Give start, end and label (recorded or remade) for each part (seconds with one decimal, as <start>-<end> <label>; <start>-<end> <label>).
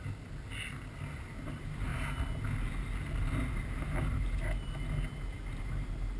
0.0-6.2 recorded